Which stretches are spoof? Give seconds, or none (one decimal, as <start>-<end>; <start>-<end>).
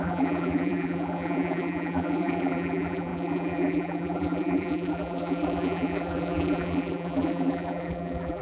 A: 0.0-8.4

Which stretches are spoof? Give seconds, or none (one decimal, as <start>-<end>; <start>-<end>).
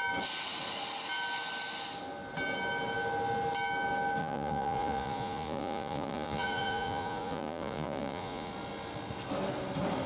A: 4.2-8.5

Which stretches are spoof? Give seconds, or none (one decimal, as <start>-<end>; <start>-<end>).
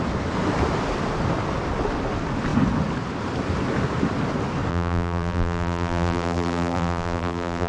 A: 4.7-7.7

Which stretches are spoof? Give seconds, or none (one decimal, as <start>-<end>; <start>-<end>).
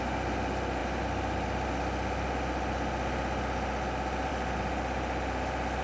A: none